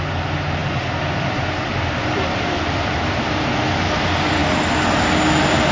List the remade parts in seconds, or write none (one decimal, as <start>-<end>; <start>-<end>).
none